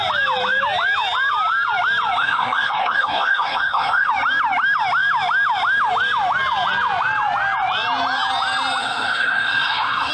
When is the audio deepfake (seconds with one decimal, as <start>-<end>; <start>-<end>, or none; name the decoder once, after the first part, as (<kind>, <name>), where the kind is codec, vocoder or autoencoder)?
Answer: 2.2-4.1 (codec, SNAC); 8.8-10.1